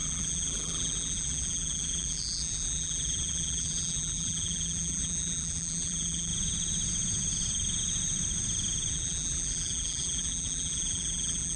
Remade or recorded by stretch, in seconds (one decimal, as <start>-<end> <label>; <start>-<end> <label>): 0.0-6.3 remade; 6.3-8.9 recorded; 8.9-11.6 remade